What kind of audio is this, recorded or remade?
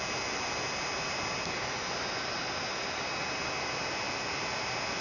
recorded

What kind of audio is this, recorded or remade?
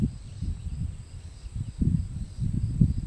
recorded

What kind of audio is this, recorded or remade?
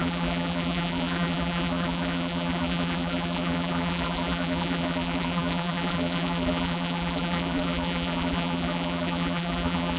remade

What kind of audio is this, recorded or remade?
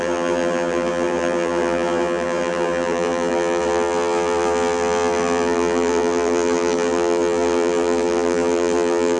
remade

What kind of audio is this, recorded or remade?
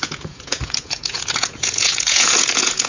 remade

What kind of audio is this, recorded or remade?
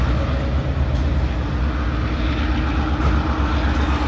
recorded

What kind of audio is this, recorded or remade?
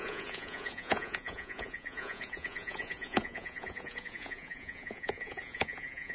remade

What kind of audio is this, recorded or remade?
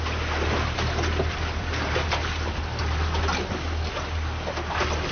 recorded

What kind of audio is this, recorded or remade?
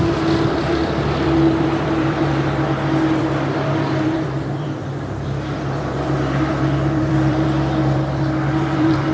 remade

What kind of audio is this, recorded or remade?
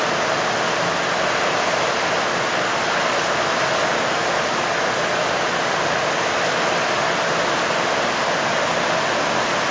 recorded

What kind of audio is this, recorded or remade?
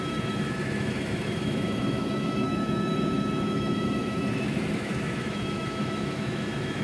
remade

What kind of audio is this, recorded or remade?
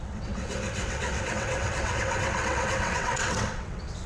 remade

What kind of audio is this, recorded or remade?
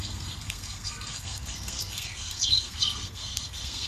remade